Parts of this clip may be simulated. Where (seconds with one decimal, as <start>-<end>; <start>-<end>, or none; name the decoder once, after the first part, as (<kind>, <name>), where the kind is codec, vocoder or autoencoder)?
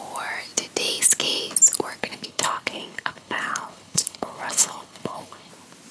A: 2.0-5.5 (codec, HILCodec)